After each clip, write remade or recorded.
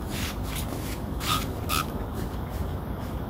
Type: remade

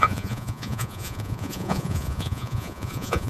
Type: remade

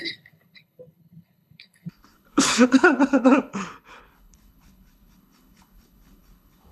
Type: remade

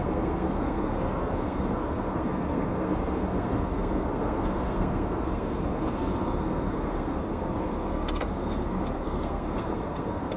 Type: remade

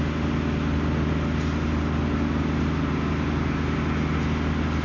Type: recorded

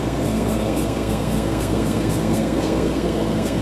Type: remade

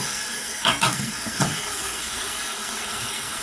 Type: remade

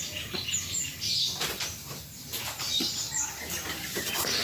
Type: recorded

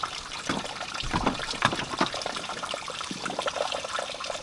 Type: remade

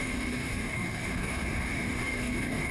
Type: remade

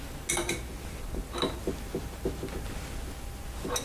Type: recorded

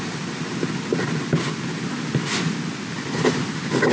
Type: recorded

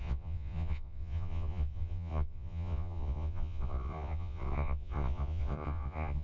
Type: remade